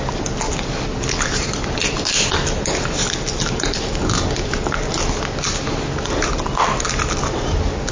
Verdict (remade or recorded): recorded